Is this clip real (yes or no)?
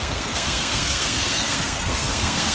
no